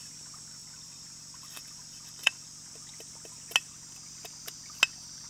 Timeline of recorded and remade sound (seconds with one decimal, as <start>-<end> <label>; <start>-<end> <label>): 0.0-0.6 recorded; 0.6-2.7 remade; 2.7-5.3 recorded